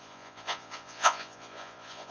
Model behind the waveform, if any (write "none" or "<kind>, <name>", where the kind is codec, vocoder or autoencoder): vocoder, Vocos